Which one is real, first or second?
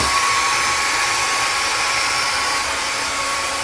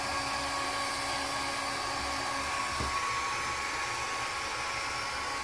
second